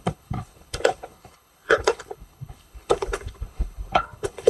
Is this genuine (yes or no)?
no